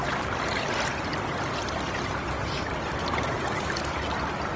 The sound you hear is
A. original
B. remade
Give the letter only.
A